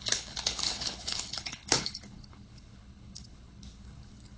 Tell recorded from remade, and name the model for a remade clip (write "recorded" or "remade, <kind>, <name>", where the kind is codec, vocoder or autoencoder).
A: remade, codec, HILCodec